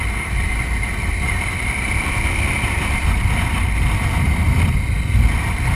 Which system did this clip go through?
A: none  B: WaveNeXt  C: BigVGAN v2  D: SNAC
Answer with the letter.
C